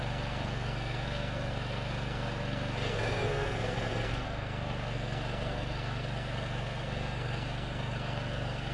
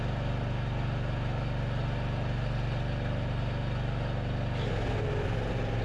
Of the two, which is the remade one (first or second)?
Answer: first